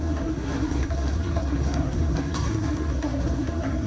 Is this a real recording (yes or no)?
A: no